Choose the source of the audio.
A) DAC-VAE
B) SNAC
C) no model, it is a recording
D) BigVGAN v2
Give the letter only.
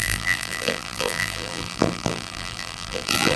D